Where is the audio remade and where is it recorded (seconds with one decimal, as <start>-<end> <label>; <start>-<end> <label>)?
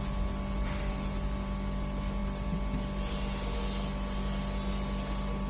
0.0-5.5 recorded